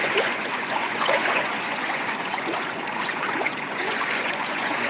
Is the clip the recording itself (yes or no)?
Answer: no